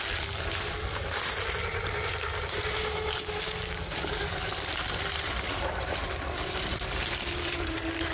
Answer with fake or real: real